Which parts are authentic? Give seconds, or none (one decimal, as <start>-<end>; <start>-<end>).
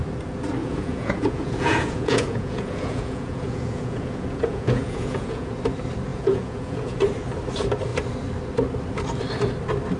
0.0-0.6; 5.5-6.1; 7.0-10.0